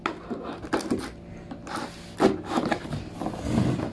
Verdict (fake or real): real